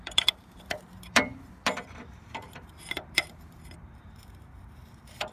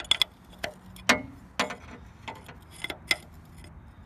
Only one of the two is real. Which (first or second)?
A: second